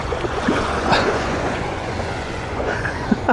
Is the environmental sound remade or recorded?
remade